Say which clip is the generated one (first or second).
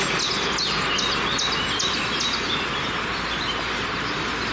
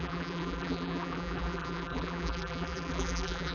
second